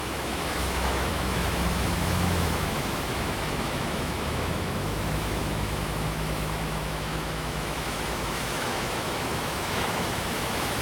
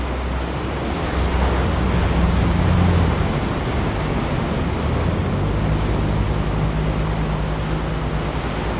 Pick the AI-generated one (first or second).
first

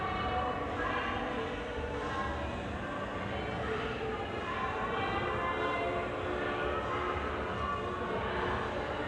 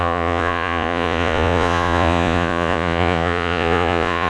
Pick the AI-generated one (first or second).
second